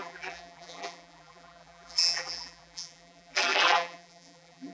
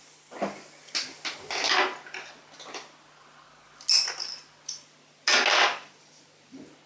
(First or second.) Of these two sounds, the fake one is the first